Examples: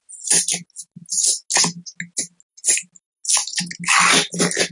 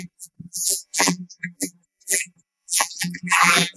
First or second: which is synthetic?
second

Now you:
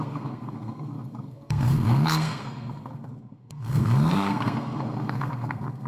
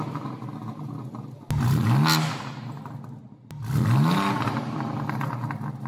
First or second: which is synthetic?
first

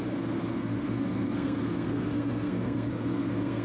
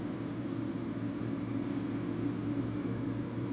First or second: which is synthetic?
first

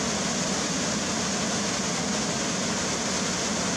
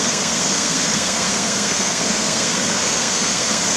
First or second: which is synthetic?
second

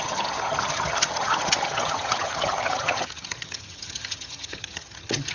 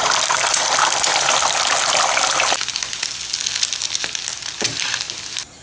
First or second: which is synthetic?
first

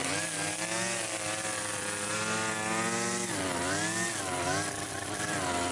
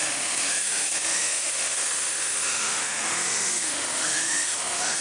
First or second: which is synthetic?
second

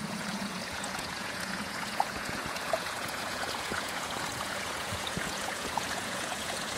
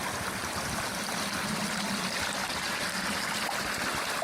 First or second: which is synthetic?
first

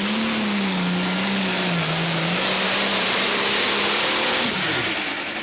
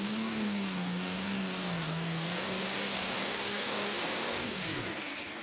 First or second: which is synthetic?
second